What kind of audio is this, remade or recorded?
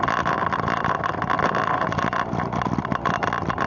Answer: recorded